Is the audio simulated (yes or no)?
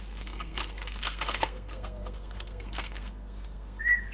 yes